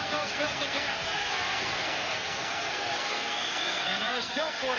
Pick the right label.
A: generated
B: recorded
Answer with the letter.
A